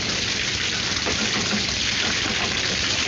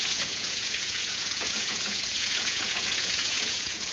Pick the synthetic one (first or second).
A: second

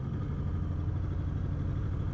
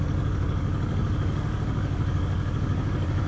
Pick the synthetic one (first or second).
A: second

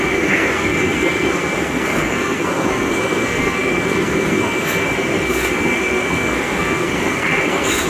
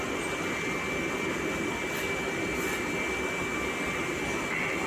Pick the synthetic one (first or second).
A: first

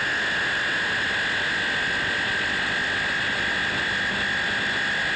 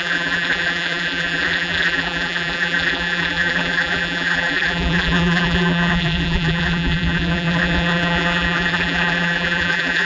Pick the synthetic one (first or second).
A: second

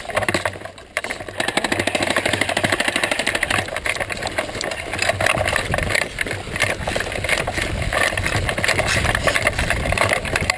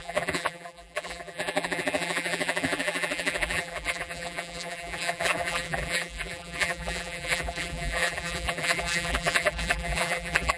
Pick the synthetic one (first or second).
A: second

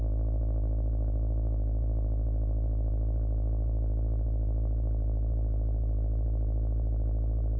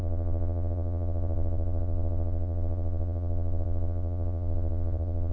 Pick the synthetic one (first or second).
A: second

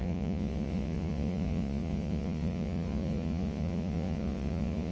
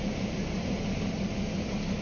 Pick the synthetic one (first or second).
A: first